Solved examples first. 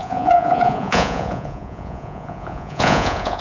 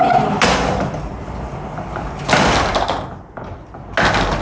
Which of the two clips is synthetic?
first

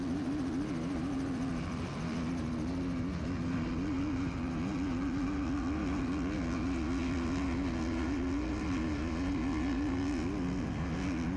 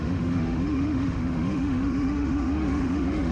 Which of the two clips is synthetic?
second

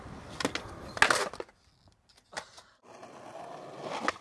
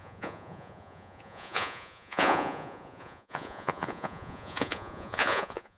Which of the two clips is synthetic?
second